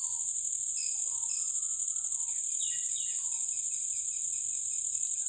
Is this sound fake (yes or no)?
no